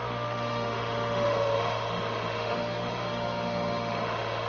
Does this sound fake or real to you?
fake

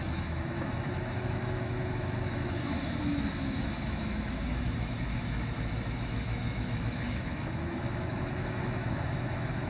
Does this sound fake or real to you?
fake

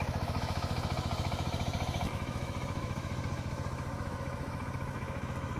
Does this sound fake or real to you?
fake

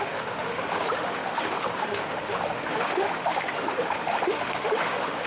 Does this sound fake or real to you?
fake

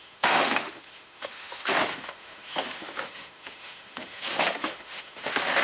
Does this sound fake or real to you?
fake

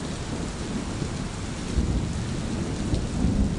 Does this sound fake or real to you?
real